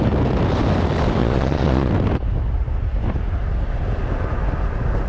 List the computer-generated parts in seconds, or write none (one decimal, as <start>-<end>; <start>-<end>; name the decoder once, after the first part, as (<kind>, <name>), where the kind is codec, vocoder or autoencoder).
1.2-1.9 (vocoder, Vocos)